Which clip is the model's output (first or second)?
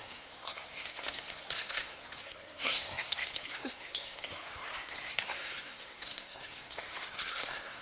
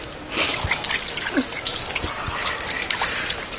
first